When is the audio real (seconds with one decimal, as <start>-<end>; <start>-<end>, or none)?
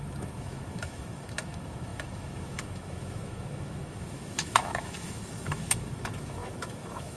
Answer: none